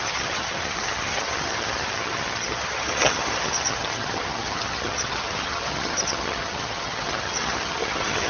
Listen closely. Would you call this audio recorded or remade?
remade